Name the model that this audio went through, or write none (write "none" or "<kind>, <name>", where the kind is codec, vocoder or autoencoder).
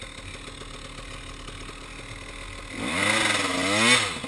none